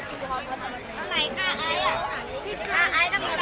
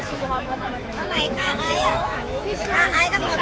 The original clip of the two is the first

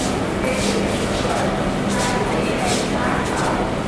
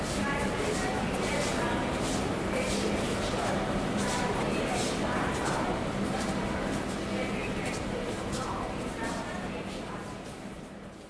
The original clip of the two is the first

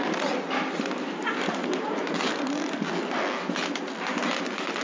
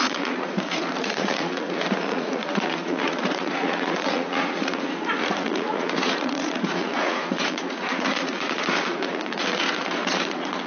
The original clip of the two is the first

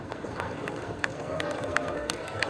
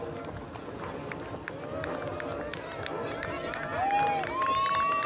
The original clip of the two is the second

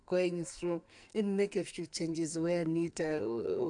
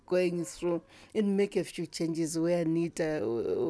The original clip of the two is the second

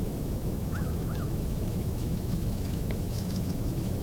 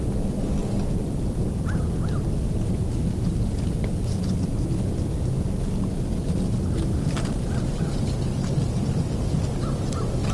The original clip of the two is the second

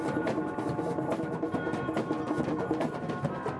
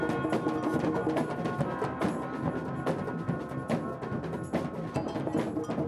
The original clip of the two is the second